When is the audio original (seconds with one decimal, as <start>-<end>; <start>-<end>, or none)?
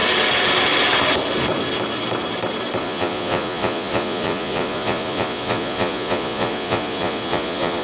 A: 0.0-2.8